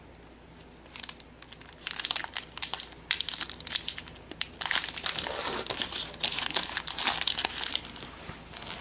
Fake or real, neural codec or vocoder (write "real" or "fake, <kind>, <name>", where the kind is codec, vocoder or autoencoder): real